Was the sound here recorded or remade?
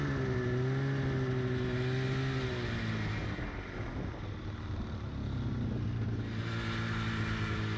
recorded